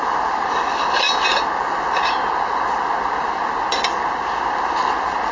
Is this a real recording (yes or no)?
yes